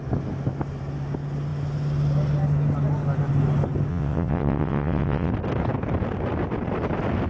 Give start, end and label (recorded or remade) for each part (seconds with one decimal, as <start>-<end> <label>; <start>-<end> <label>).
0.0-3.9 recorded; 3.9-5.3 remade; 5.3-7.3 recorded